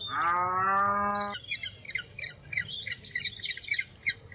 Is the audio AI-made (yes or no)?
no